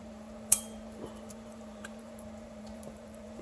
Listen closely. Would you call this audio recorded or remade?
remade